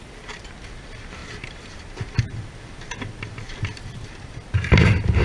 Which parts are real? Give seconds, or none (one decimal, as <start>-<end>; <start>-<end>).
0.0-5.2